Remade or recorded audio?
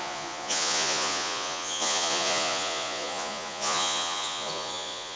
remade